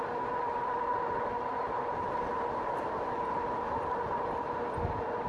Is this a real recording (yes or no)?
yes